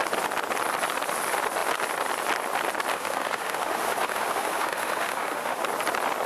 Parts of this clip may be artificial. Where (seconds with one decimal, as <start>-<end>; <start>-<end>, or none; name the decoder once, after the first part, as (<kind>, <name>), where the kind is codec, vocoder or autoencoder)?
2.9-5.6 (autoencoder, DAC-VAE)